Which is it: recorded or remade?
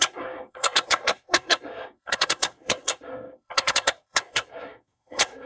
remade